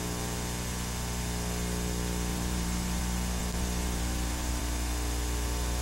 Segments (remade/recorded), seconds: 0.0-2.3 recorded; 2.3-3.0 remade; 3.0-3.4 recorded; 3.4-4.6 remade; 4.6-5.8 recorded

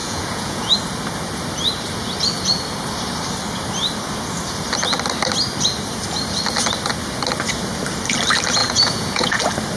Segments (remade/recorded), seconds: 0.0-0.7 remade; 0.7-8.6 recorded; 8.6-9.4 remade; 9.4-9.8 recorded

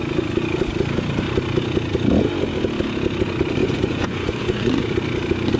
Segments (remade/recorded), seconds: 0.0-3.6 recorded; 3.6-4.8 remade; 4.8-5.6 recorded

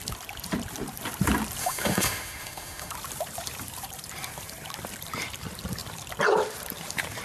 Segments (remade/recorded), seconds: 0.0-1.6 recorded; 1.6-2.9 remade; 2.9-7.2 recorded

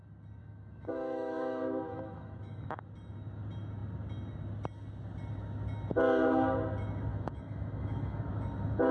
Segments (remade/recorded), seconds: 0.0-0.4 recorded; 0.4-2.8 remade; 2.8-7.1 recorded; 7.1-8.3 remade; 8.3-8.9 recorded

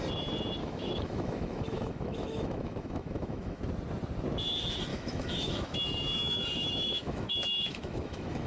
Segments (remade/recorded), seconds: 0.0-0.6 recorded; 0.6-3.6 remade; 3.6-4.9 recorded; 4.9-8.5 remade

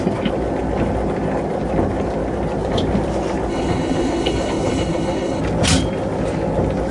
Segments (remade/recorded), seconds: 0.0-3.5 recorded; 3.5-5.4 remade; 5.4-6.9 recorded